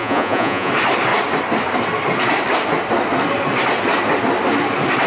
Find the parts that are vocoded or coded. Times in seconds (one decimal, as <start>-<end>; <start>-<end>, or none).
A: 0.0-0.7